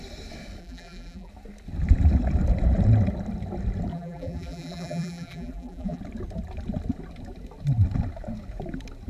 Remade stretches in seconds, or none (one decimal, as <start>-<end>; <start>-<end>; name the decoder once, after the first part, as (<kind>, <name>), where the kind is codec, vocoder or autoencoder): 0.6-1.3 (vocoder, BigVGAN v2); 3.9-6.0